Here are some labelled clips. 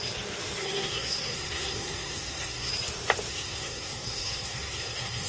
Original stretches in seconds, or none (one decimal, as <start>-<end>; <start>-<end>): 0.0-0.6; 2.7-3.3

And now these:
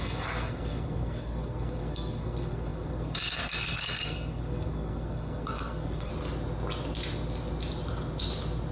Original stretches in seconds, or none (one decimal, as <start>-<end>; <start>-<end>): 6.1-8.7

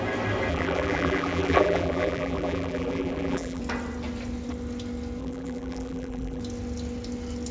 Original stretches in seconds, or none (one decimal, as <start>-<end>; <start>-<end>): 0.0-0.5; 3.6-5.2; 6.4-7.5